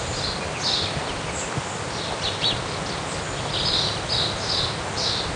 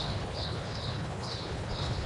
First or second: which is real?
first